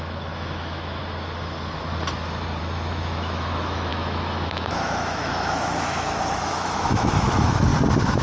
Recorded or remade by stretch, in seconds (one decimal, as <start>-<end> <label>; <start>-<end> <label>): 0.0-1.0 remade; 1.0-2.6 recorded; 2.6-7.7 remade; 7.7-8.2 recorded